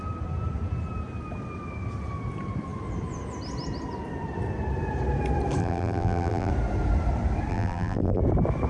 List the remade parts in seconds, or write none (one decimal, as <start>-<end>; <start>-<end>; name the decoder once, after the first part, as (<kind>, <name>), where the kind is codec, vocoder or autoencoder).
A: 5.6-6.5 (vocoder, BigVGAN v2); 7.5-8.2